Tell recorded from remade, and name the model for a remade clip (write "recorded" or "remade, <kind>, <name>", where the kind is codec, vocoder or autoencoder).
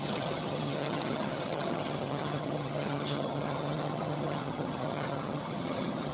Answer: remade, vocoder, HiFi-GAN